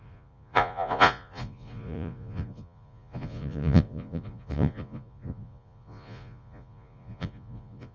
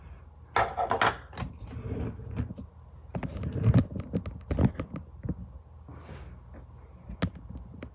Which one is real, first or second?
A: second